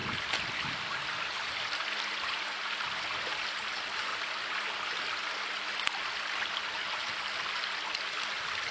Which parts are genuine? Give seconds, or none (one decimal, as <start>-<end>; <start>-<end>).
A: 0.0-8.7